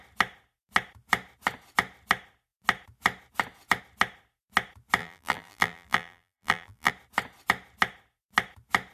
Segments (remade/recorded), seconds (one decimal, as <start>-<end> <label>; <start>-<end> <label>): 0.0-5.0 recorded; 5.0-6.9 remade; 6.9-8.9 recorded

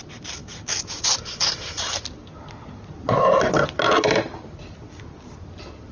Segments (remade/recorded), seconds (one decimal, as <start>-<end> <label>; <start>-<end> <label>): 0.0-5.9 recorded